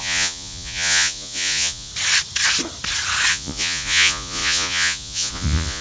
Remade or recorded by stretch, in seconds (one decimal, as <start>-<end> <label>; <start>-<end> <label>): 0.0-1.9 remade; 1.9-3.3 recorded; 3.3-5.8 remade